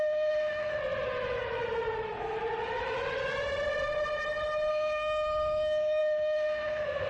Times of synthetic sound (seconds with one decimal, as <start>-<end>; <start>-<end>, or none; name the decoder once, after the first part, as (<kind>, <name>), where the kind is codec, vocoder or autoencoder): 0.0-0.8 (autoencoder, DAC-VAE); 4.7-7.1